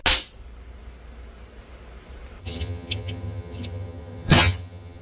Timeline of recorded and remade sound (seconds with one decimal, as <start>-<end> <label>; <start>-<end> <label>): 0.0-2.4 recorded; 2.4-5.0 remade